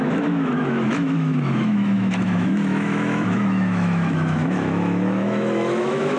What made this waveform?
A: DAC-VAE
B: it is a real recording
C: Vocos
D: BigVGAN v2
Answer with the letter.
A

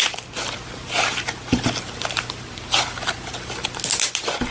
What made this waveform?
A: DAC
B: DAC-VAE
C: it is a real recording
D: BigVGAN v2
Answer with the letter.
C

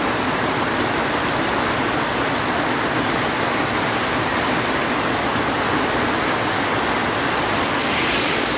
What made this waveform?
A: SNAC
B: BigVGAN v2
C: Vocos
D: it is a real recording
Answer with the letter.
D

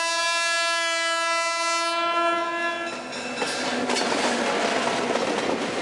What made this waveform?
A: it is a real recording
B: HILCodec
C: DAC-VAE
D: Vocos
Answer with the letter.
A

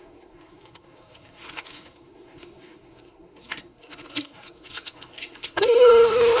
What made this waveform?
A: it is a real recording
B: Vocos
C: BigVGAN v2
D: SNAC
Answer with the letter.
D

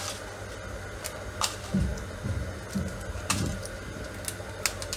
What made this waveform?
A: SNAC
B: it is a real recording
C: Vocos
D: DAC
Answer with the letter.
B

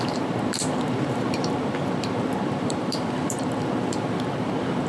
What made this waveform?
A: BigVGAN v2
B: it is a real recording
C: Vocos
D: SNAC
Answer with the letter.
A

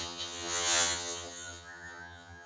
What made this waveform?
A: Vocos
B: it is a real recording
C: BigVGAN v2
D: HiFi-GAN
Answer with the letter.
D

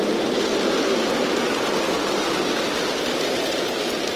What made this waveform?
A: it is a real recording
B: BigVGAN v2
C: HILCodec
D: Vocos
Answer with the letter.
A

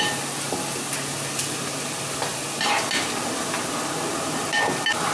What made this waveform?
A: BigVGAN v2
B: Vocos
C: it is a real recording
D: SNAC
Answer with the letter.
C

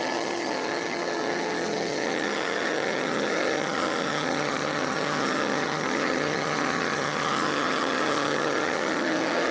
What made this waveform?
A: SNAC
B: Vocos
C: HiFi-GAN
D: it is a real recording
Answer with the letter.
C